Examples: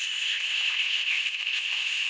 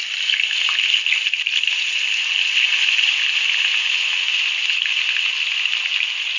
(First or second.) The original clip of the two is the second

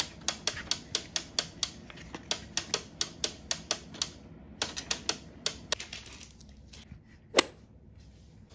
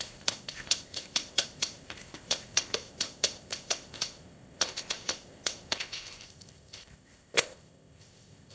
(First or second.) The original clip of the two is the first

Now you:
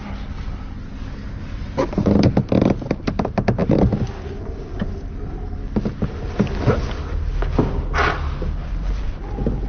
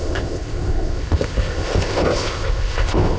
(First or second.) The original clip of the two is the first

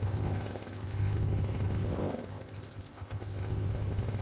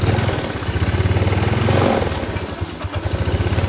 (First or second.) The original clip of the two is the second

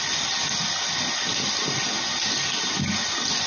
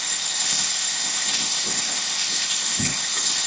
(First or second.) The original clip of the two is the first